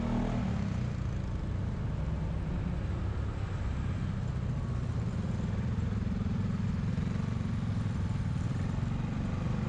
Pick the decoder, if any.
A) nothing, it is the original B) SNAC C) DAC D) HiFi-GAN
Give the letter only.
A